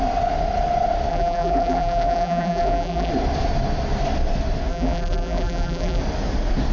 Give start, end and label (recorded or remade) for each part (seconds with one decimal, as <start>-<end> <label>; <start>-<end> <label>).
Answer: 0.0-1.1 recorded; 1.1-3.1 remade; 3.1-4.7 recorded; 4.7-6.0 remade; 6.0-6.7 recorded